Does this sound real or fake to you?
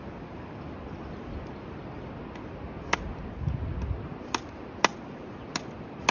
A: real